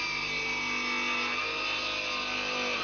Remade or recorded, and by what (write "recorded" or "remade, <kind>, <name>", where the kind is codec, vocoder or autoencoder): recorded